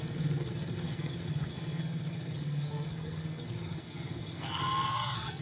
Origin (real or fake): fake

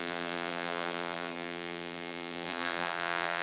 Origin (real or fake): fake